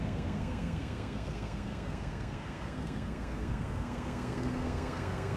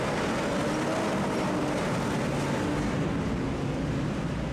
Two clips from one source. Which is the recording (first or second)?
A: second